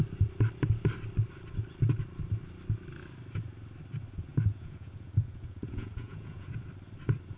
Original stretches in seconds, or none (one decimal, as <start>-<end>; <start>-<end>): 0.0-4.3; 6.6-7.4